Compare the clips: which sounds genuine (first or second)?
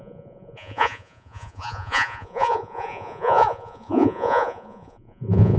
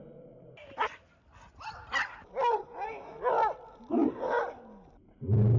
second